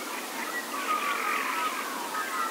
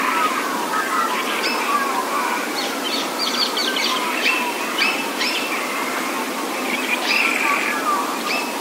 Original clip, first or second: first